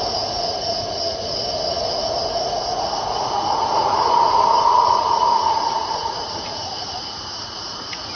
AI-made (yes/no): yes